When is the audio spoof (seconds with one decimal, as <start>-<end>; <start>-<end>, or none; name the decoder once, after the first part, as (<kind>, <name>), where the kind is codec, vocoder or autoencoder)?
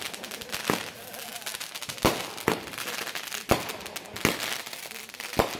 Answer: none